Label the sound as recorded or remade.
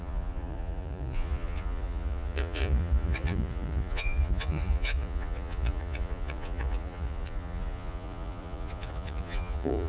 remade